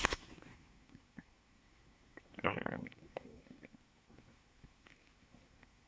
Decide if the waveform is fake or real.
fake